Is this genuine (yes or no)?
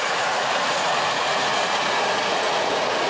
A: no